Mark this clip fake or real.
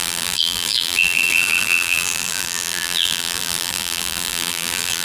fake